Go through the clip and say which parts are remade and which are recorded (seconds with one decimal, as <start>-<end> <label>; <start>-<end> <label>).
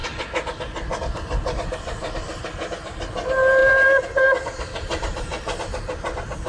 0.0-6.5 recorded